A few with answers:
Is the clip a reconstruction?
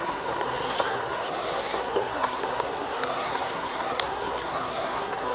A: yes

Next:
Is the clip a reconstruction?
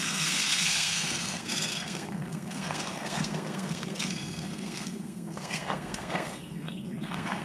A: yes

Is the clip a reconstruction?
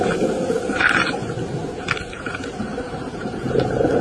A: no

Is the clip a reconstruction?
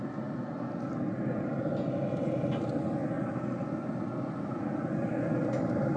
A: no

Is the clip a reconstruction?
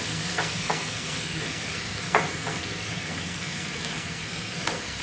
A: yes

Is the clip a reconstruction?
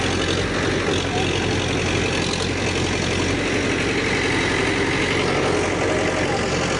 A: no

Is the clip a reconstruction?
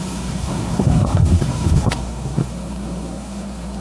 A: yes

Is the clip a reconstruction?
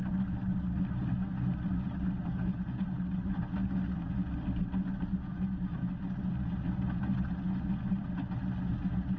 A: no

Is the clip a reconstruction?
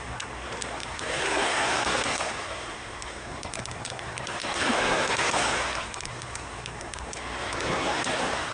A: yes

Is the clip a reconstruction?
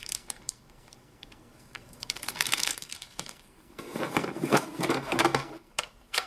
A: yes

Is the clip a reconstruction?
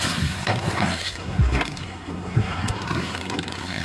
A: yes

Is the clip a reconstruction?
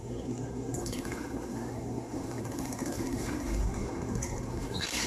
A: yes